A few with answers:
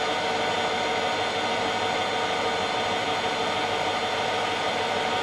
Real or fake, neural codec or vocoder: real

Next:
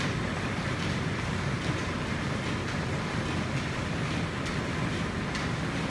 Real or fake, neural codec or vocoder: real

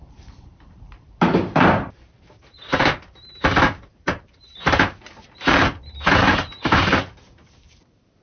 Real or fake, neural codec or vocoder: fake, vocoder, BigVGAN v2